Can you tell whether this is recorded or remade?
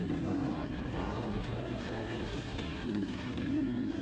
remade